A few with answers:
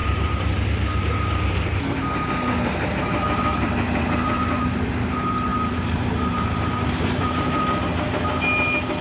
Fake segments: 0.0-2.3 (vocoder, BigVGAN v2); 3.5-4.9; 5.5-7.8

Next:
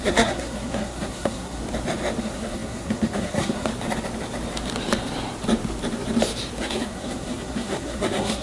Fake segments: 0.0-1.6 (codec, SNAC); 2.2-3.7; 6.6-8.4